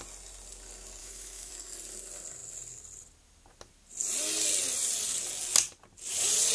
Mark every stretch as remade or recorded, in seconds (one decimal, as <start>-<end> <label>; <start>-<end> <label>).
0.0-1.0 recorded; 1.0-1.5 remade; 1.5-6.5 recorded